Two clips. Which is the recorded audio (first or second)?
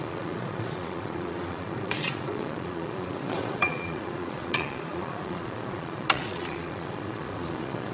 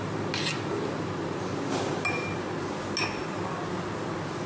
second